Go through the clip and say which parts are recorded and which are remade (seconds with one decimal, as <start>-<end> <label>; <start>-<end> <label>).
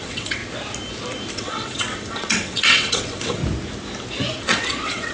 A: 0.0-0.4 remade; 0.4-1.3 recorded; 1.3-3.4 remade; 3.4-4.4 recorded; 4.4-5.1 remade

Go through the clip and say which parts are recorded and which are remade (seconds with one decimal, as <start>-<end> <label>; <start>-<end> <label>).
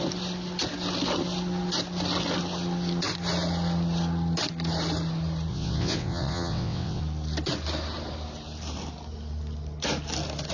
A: 0.0-5.5 recorded; 5.5-7.0 remade; 7.0-10.5 recorded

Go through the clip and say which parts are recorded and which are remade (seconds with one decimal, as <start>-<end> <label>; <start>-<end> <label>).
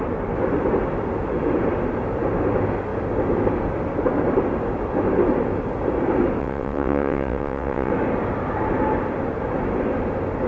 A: 0.0-6.4 recorded; 6.4-7.9 remade; 7.9-10.5 recorded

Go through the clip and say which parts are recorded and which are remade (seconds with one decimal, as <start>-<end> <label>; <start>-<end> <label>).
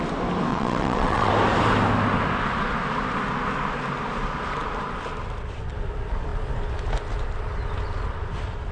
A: 0.0-0.5 recorded; 0.5-1.3 remade; 1.3-8.7 recorded